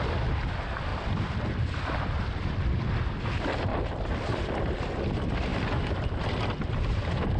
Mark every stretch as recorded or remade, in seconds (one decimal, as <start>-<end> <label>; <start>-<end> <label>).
0.0-0.9 recorded; 0.9-3.3 remade; 3.3-3.7 recorded; 3.7-4.9 remade; 4.9-5.5 recorded; 5.5-7.4 remade